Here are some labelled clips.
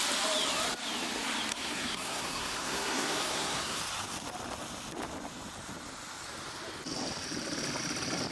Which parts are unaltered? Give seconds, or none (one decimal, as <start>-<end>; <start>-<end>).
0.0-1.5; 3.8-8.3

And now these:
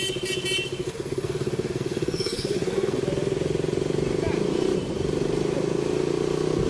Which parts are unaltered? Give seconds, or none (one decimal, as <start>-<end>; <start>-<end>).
0.0-0.8; 3.0-6.7

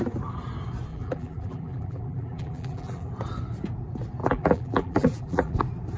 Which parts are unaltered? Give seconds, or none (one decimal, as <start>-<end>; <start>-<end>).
0.0-0.9; 3.1-4.2; 5.6-6.0

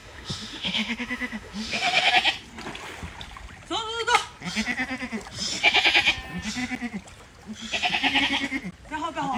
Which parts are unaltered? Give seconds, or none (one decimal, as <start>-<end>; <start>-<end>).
2.1-9.4

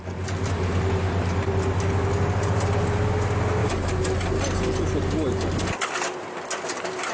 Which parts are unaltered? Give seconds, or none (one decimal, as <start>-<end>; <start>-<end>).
0.0-7.1

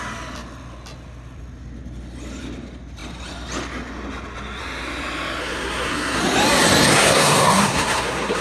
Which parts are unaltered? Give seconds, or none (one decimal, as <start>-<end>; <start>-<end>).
0.0-5.4; 6.2-6.9

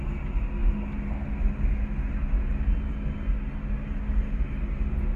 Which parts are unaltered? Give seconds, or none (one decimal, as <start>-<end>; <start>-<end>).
0.0-5.2

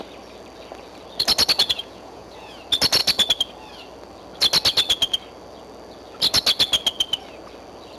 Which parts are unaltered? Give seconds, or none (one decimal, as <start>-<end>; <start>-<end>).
0.0-1.6; 2.6-8.0